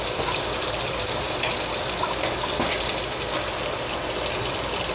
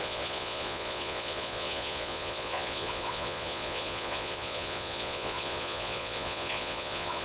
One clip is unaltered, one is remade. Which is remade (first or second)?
second